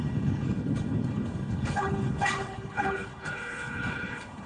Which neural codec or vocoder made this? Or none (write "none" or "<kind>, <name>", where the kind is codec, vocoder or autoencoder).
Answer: codec, HILCodec